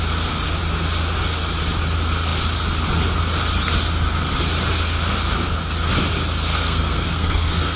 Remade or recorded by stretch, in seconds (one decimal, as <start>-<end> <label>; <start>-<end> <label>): 0.0-6.5 recorded; 6.5-7.8 remade